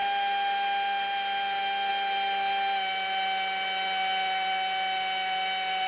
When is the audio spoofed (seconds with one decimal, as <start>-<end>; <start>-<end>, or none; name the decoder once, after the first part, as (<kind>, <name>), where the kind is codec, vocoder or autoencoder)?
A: none

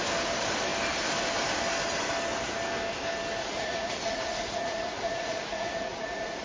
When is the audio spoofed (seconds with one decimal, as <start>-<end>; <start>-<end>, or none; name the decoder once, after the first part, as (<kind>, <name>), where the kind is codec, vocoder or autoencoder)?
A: 3.4-6.4 (vocoder, Vocos)

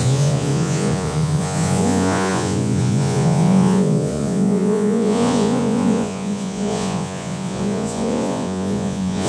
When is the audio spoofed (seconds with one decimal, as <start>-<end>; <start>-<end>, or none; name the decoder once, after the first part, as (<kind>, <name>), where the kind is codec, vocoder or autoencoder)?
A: 0.0-9.3 (vocoder, Vocos)